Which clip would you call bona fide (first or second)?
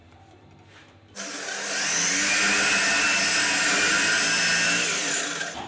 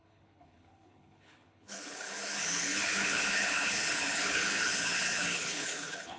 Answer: first